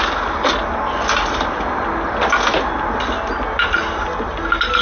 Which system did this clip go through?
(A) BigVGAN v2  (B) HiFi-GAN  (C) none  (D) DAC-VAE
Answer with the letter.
C